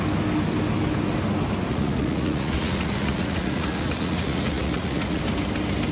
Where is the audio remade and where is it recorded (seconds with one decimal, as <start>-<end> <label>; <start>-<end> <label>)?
0.0-1.7 recorded; 1.7-5.2 remade; 5.2-5.9 recorded